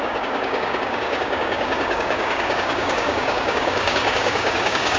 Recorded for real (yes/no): no